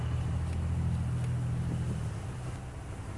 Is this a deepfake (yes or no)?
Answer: no